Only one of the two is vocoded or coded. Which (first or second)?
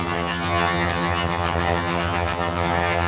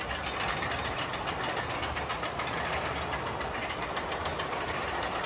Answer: first